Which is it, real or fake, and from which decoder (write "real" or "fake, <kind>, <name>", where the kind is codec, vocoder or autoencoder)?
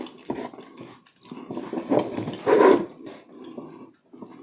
real